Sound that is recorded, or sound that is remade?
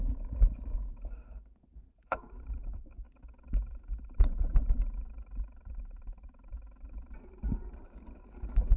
remade